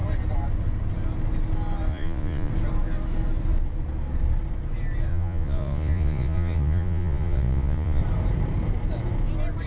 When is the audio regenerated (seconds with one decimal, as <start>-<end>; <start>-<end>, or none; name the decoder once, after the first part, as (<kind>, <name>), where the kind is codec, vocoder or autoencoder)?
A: 1.9-2.5 (vocoder, Vocos); 5.1-8.0